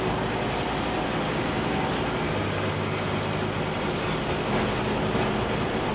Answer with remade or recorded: recorded